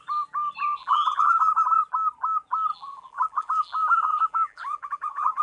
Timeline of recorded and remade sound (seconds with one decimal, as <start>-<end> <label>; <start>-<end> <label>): 0.0-0.8 recorded; 0.8-1.5 remade; 1.5-2.7 recorded; 2.7-5.4 remade